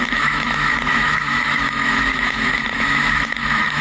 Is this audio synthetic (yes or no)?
yes